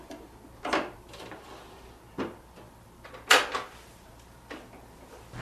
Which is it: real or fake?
real